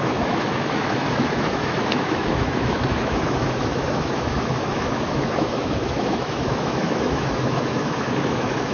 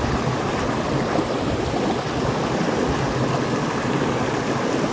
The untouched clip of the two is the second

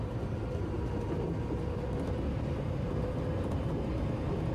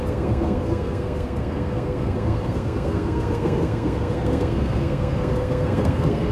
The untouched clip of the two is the first